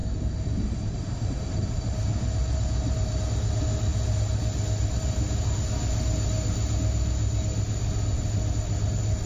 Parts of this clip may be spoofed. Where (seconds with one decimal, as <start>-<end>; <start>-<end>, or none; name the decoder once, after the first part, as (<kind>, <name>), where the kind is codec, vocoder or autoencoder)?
0.0-3.2 (vocoder, BigVGAN v2)

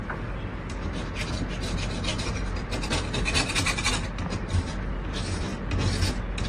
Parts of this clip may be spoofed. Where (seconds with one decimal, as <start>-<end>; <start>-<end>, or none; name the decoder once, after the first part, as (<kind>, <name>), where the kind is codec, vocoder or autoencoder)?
2.1-3.9 (vocoder, BigVGAN v2)

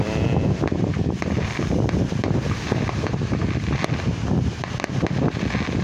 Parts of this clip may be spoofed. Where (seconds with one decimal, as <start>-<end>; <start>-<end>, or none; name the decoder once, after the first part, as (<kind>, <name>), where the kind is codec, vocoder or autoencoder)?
0.0-2.2 (vocoder, BigVGAN v2)

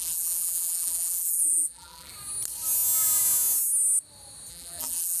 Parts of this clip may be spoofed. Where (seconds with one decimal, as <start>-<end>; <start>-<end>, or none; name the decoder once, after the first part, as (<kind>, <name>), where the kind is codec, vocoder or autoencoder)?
0.0-2.1 (vocoder, BigVGAN v2); 4.5-5.2

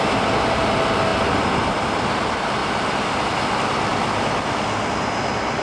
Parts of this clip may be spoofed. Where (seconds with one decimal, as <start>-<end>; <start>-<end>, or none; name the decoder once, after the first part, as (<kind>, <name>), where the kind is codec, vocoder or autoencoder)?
none